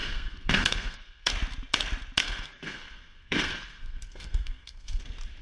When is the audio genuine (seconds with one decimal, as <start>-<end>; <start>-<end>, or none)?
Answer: 1.3-2.2; 5.0-5.4